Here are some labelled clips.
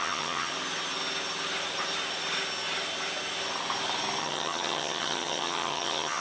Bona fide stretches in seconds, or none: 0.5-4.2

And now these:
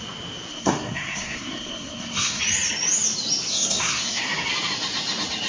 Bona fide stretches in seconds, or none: 0.0-0.5; 2.4-3.5; 4.2-5.5

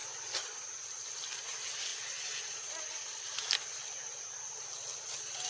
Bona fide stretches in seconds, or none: 0.0-5.5

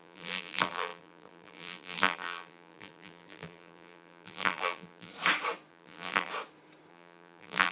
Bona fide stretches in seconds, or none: 5.1-5.7; 6.3-6.9